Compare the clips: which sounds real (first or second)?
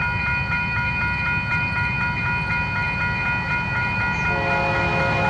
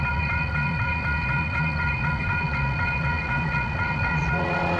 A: first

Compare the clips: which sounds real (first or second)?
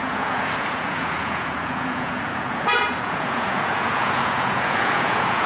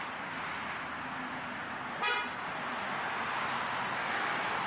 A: second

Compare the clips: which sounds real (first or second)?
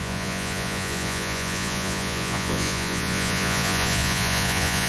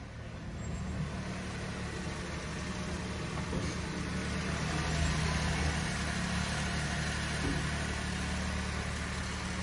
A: second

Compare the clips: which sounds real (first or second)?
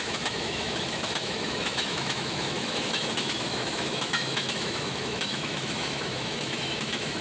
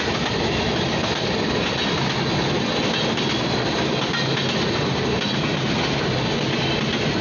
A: second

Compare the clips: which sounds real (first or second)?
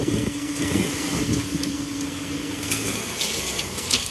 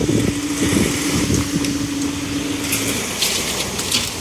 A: second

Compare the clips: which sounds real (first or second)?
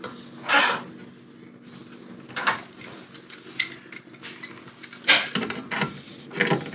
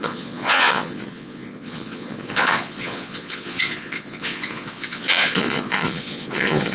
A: first